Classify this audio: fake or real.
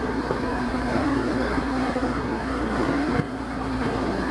fake